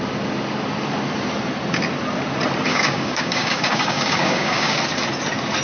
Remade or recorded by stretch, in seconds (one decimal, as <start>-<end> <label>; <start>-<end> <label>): 0.0-2.7 recorded; 2.7-4.8 remade; 4.8-5.6 recorded